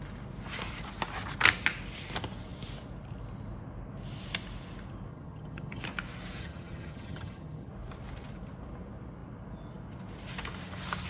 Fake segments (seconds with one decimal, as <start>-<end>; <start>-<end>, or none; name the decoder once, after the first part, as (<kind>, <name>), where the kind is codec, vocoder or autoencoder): 5.1-5.8 (vocoder, HiFi-GAN); 6.4-7.7